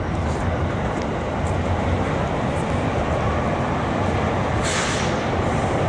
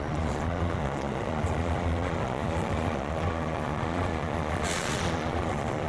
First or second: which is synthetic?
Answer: second